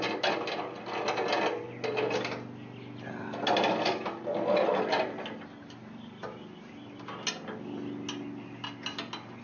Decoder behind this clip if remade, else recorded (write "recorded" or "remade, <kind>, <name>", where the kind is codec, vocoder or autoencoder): recorded